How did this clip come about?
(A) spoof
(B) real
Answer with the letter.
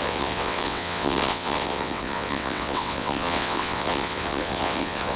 A